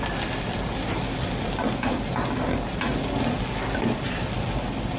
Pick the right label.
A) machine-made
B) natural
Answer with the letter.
B